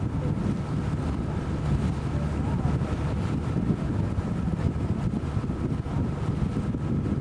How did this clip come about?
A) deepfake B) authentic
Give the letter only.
B